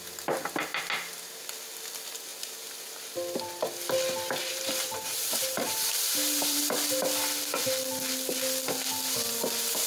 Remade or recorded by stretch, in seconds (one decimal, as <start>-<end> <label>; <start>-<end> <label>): 0.0-2.3 recorded; 2.3-3.1 remade; 3.1-4.5 recorded; 4.5-6.6 remade; 6.6-9.9 recorded